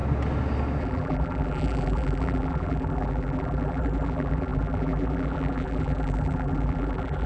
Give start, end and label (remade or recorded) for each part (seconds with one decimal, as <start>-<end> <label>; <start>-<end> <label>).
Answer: 0.0-0.8 recorded; 0.8-7.3 remade